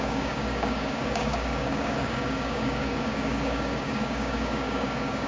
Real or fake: fake